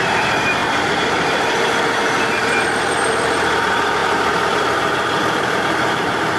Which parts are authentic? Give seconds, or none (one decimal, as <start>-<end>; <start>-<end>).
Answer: none